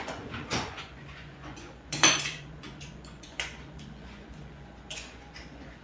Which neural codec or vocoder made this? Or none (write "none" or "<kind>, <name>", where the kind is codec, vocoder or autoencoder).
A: vocoder, Vocos